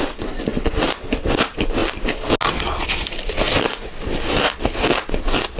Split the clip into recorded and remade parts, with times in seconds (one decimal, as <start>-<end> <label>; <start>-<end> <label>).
0.0-5.6 recorded